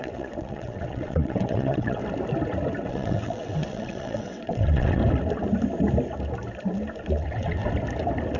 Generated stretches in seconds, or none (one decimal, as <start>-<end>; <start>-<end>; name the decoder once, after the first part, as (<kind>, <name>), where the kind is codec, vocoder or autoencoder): 0.0-2.0 (vocoder, WaveNeXt); 2.9-5.0; 7.1-7.6